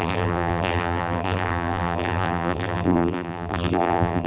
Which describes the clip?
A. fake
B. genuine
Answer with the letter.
A